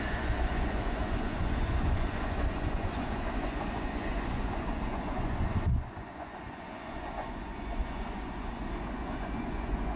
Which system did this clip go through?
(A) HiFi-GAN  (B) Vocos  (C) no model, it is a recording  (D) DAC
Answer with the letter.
B